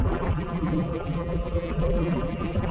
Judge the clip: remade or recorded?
remade